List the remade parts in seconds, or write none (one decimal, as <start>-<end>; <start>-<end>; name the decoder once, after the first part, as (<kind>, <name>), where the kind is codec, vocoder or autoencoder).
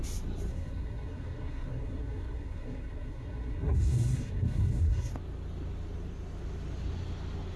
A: 0.5-5.1 (codec, SNAC)